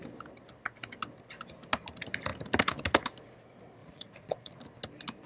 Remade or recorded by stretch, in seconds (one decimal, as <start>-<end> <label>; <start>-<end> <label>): 0.0-3.8 recorded; 3.8-4.6 remade; 4.6-5.3 recorded